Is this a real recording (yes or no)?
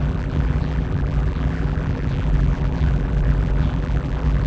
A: no